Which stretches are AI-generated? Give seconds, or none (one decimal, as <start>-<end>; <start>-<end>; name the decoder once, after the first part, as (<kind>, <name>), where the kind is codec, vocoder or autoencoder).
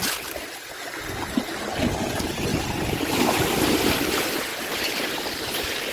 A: 2.5-4.0 (vocoder, BigVGAN v2); 4.5-5.9